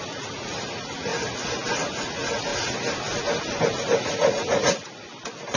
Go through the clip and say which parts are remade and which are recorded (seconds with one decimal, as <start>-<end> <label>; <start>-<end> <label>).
0.0-1.1 remade; 1.1-1.7 recorded; 1.7-2.5 remade; 2.5-3.8 recorded; 3.8-5.6 remade